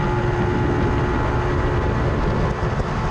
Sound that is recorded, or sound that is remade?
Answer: recorded